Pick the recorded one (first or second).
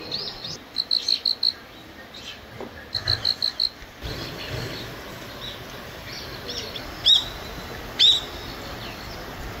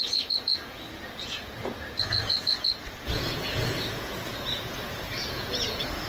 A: first